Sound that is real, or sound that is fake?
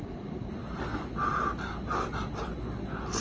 real